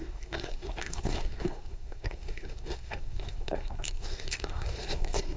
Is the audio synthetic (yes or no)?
yes